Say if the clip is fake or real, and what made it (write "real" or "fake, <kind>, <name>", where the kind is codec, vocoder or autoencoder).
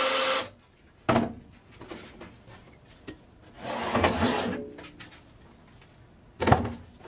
real